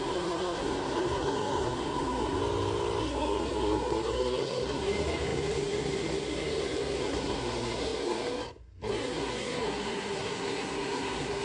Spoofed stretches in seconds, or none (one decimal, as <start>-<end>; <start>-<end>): 0.0-2.4; 3.0-11.4